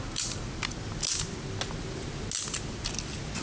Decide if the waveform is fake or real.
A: real